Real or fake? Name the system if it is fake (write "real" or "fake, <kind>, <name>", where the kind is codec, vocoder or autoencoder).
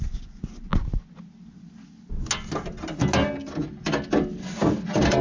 real